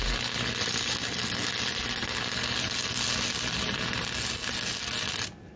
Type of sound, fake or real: real